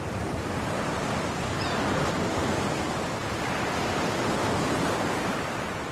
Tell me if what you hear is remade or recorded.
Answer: remade